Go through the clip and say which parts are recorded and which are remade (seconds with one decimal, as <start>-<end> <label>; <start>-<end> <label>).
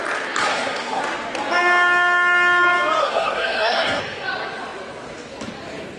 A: 0.0-0.4 recorded; 0.4-1.0 remade; 1.0-3.0 recorded; 3.0-4.0 remade; 4.0-6.0 recorded